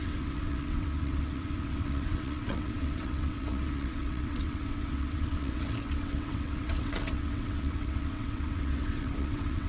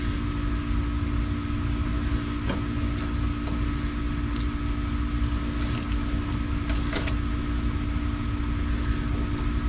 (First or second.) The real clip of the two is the second